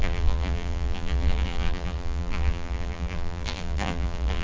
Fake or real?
fake